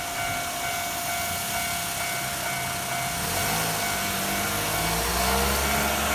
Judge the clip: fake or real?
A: real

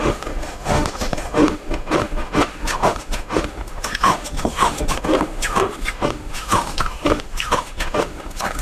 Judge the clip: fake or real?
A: fake